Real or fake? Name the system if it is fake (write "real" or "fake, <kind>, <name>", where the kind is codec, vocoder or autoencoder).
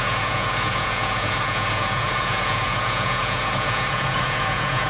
fake, vocoder, Vocos